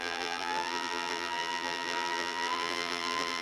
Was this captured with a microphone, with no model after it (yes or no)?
no